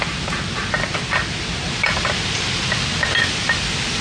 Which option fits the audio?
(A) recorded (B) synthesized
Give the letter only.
A